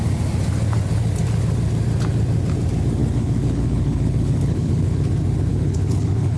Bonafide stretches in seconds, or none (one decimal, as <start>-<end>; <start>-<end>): 0.0-3.0; 5.1-5.5